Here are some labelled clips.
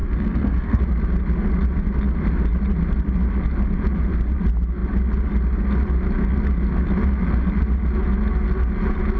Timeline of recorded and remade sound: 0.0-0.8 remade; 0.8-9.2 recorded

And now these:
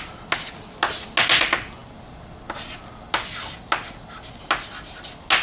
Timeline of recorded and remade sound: 0.0-5.4 recorded